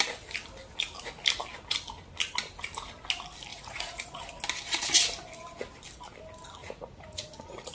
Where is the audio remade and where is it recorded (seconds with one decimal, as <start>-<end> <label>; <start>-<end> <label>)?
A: 0.0-3.5 recorded; 3.5-4.2 remade; 4.2-6.6 recorded; 6.6-7.2 remade; 7.2-7.7 recorded